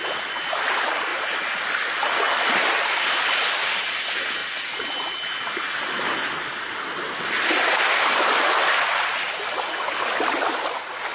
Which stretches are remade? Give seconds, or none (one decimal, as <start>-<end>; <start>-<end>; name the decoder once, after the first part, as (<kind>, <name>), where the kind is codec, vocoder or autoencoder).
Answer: none